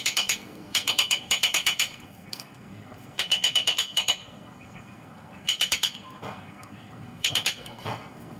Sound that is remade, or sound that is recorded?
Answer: remade